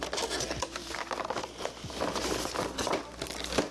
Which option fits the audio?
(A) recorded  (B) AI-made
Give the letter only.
A